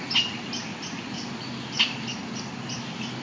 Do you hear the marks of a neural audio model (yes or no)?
no